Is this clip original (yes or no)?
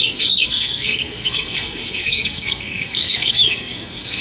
no